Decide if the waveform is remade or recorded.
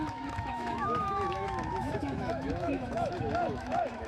remade